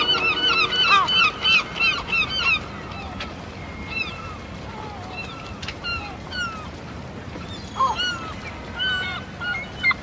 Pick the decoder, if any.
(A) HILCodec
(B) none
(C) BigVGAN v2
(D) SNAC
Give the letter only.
B